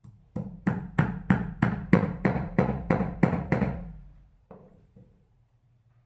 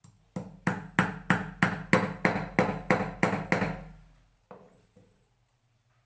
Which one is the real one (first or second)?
second